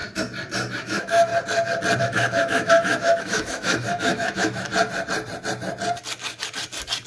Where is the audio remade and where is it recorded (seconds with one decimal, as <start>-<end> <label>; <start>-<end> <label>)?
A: 0.0-0.8 recorded; 0.8-1.3 remade; 1.3-2.0 recorded; 2.0-4.7 remade; 4.7-7.1 recorded

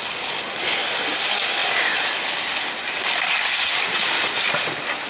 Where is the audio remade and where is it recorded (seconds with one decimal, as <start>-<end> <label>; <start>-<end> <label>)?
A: 0.0-5.1 recorded

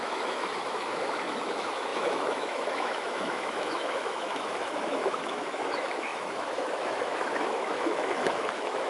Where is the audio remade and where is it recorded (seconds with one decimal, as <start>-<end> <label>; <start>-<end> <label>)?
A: 0.0-8.9 remade

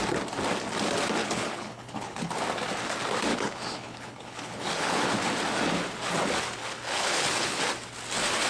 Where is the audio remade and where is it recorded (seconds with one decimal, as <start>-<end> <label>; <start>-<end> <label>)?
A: 0.0-1.2 recorded; 1.2-2.3 remade; 2.3-3.3 recorded; 3.3-5.1 remade; 5.1-6.6 recorded; 6.6-7.7 remade; 7.7-8.5 recorded

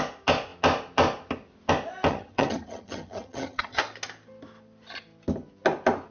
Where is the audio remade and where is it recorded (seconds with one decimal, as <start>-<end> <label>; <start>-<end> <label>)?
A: 0.0-2.1 recorded; 2.1-3.8 remade; 3.8-6.1 recorded

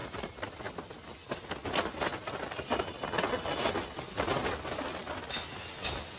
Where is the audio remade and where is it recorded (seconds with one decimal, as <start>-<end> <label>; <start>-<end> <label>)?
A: 0.0-6.2 recorded

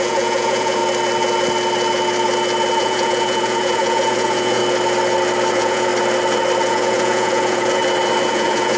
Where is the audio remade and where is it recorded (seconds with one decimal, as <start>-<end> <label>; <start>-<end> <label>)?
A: 0.0-0.8 remade; 0.8-2.8 recorded; 2.8-4.6 remade; 4.6-5.5 recorded; 5.5-5.9 remade; 5.9-6.7 recorded; 6.7-7.8 remade; 7.8-8.3 recorded; 8.3-8.8 remade